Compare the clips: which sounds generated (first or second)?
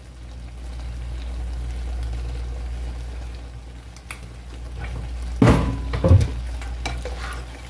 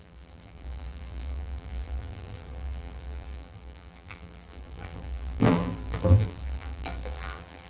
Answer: second